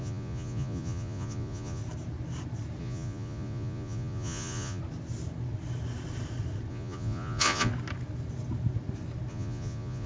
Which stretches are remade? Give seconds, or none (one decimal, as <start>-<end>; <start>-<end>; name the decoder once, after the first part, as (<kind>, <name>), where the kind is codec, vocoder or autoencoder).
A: 0.0-1.8 (vocoder, Vocos); 2.8-4.8; 6.7-7.7; 9.3-10.1